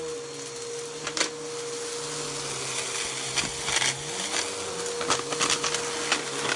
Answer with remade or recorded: recorded